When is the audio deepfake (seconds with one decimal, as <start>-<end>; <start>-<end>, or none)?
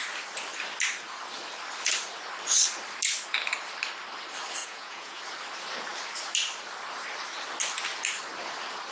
4.6-5.2